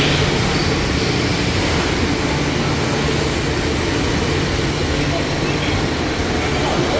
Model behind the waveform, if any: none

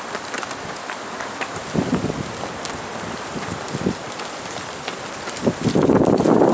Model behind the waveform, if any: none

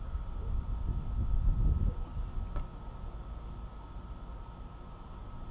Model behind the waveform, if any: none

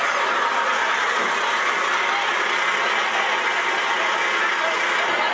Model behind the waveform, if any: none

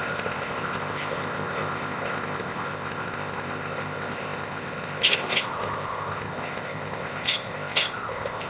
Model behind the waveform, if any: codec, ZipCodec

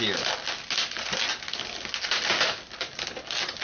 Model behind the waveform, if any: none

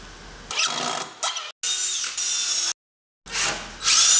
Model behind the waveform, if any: none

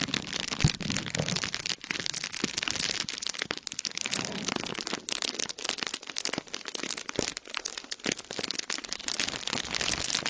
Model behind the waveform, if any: none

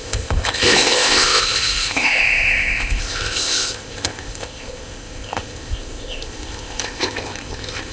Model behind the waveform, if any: codec, ZipCodec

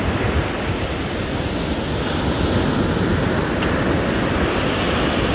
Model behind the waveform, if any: none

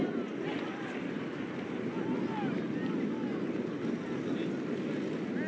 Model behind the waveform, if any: none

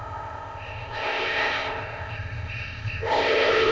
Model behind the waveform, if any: codec, ZipCodec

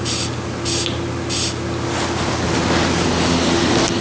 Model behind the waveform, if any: none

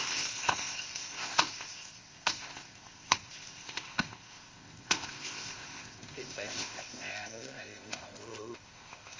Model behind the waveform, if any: codec, ZipCodec